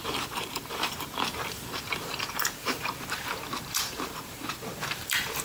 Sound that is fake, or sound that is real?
fake